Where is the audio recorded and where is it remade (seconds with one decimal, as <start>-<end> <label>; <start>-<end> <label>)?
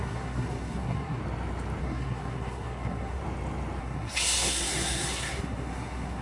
0.0-1.2 remade; 1.2-1.8 recorded; 1.8-3.2 remade; 3.2-3.8 recorded; 3.8-6.2 remade